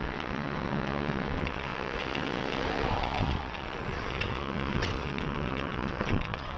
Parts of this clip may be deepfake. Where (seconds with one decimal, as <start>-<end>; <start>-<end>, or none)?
0.0-6.6